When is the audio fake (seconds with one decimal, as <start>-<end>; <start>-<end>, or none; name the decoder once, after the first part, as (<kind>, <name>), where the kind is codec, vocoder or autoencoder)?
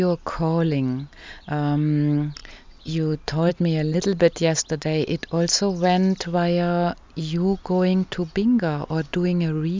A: 2.4-3.5 (vocoder, WaveNeXt)